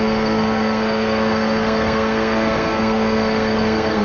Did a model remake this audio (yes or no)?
yes